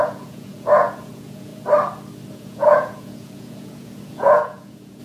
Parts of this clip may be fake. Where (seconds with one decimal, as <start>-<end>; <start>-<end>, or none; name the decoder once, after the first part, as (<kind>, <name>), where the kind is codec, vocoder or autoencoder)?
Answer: 0.0-1.5 (vocoder, Vocos); 2.3-5.0